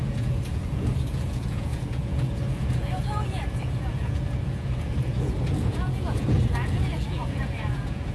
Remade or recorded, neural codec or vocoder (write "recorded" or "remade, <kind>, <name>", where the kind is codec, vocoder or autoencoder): remade, vocoder, Vocos